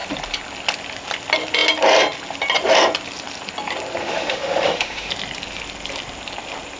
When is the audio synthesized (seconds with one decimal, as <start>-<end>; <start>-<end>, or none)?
4.0-5.1